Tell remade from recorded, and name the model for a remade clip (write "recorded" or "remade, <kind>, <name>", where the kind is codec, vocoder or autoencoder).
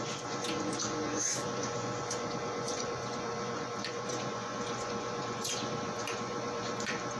remade, vocoder, Vocos